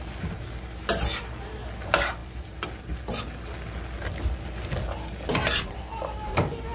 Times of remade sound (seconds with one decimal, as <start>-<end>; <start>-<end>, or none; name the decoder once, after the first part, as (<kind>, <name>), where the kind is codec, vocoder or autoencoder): none